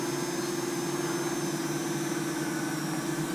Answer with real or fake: real